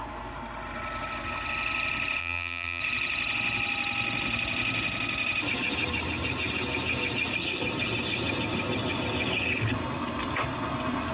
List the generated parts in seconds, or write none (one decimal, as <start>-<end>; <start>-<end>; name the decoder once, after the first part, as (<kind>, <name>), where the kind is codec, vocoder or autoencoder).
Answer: 2.2-2.8 (vocoder, BigVGAN v2)